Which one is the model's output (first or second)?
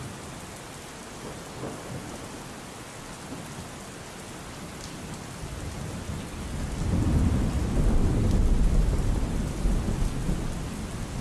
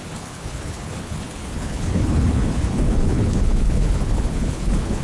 second